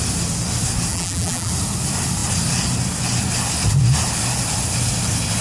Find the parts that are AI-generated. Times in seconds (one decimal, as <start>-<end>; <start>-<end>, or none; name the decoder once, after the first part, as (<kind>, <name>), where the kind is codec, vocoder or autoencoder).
0.9-1.5 (vocoder, BigVGAN v2)